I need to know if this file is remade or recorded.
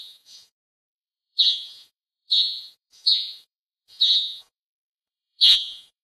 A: remade